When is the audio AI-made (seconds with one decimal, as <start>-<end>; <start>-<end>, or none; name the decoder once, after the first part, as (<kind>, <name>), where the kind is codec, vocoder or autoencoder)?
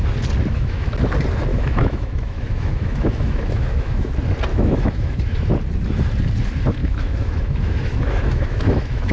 0.4-0.9 (autoencoder, DAC-VAE); 1.5-4.1; 4.5-5.5; 6.8-9.1